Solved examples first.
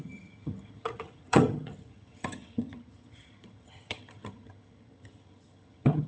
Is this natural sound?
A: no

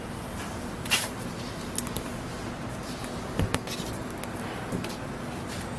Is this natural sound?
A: yes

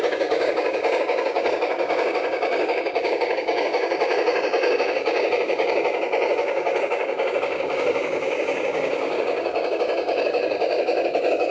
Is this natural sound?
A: no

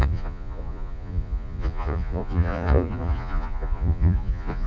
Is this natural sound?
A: no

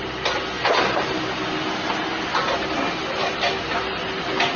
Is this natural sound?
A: yes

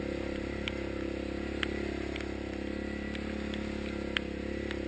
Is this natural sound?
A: yes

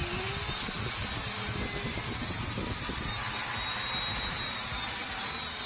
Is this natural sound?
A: yes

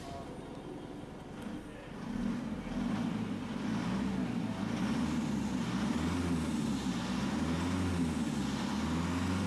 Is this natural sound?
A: yes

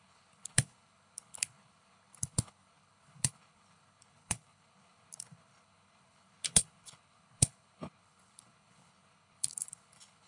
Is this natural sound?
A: no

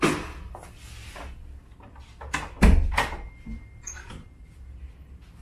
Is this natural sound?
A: yes